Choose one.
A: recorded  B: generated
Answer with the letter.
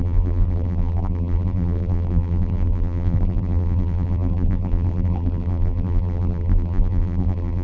B